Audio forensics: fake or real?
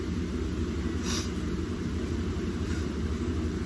fake